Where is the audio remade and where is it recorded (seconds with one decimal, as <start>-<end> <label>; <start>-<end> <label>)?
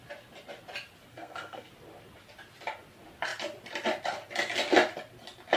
0.0-1.1 recorded; 1.1-1.7 remade; 1.7-5.6 recorded